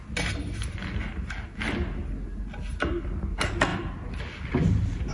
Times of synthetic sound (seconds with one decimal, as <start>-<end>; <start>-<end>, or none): none